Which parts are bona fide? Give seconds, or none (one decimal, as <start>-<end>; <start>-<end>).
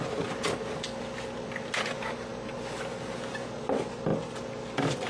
0.0-5.1